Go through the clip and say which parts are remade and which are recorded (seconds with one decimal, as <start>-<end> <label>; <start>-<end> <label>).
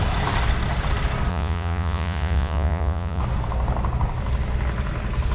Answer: 0.0-1.3 recorded; 1.3-3.2 remade; 3.2-5.3 recorded